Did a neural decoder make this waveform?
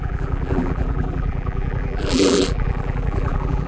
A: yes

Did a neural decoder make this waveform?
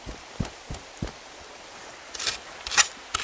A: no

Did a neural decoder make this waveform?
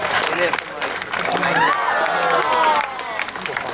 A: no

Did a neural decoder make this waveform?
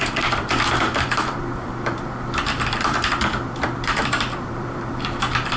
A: yes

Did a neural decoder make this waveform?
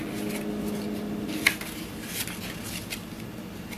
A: no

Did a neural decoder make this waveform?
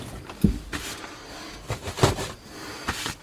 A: no